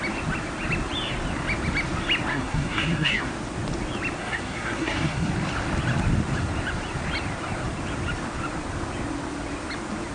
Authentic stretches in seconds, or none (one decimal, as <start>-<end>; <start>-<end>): 0.0-2.3; 3.3-4.2; 5.3-10.1